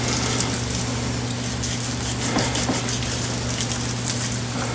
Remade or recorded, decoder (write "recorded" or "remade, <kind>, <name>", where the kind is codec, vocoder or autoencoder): recorded